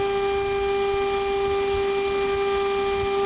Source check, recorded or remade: recorded